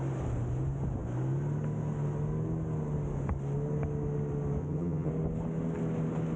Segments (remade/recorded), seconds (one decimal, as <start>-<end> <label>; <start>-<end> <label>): 0.0-4.6 recorded; 4.6-5.1 remade; 5.1-6.4 recorded